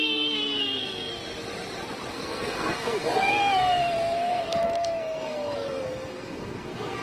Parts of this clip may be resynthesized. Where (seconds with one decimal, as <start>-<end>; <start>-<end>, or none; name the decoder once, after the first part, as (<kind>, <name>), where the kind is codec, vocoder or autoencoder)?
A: 0.0-1.1 (codec, SNAC); 2.1-7.0

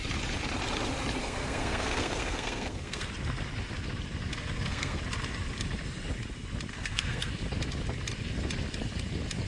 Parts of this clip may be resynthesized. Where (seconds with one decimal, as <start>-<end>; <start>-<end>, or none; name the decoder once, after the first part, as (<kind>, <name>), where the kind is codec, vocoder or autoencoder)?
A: 1.2-3.1 (codec, SNAC); 4.3-5.0; 6.7-7.3

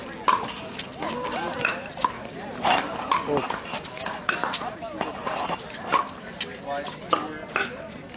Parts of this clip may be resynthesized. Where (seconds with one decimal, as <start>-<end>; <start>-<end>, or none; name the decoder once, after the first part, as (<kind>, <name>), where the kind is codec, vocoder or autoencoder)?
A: none

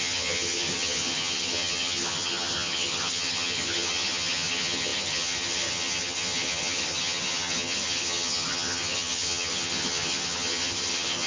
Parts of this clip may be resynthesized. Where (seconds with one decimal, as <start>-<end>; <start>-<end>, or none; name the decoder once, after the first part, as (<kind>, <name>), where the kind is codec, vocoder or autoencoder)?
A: 0.0-11.3 (vocoder, HiFi-GAN)